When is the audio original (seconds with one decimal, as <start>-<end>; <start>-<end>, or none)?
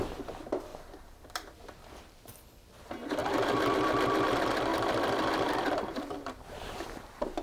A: 0.0-0.7; 2.2-4.7; 6.9-7.4